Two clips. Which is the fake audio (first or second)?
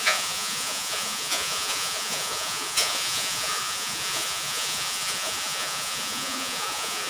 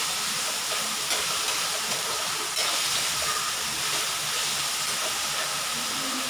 first